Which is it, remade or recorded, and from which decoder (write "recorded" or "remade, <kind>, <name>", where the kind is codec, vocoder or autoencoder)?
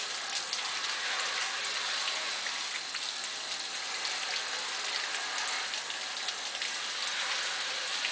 recorded